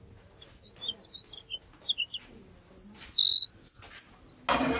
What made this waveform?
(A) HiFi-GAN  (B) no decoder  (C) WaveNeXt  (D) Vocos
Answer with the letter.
B